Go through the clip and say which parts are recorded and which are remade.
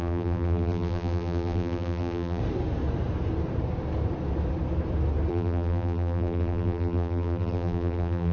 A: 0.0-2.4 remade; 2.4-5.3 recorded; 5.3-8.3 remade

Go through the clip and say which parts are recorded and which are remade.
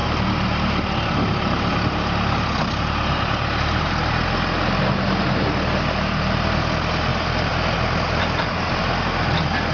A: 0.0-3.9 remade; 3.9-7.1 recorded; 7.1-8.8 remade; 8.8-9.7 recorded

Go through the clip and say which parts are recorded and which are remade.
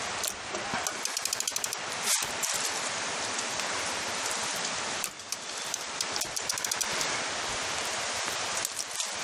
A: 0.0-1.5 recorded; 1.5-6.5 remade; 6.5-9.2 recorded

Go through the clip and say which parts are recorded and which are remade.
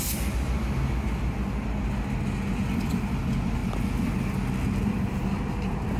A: 0.0-6.0 recorded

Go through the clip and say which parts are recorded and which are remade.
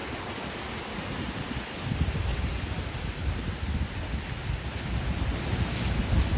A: 0.0-6.4 recorded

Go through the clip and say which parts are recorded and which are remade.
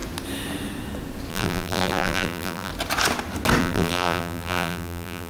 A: 0.0-1.3 recorded; 1.3-2.7 remade; 2.7-3.6 recorded; 3.6-5.3 remade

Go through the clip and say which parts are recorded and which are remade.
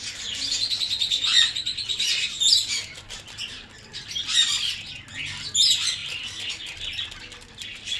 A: 0.0-3.9 recorded; 3.9-4.9 remade; 4.9-8.0 recorded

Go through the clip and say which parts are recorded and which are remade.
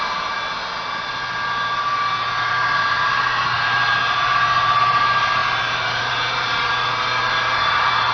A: 0.0-0.6 remade; 0.6-2.5 recorded; 2.5-3.8 remade; 3.8-4.8 recorded; 4.8-8.1 remade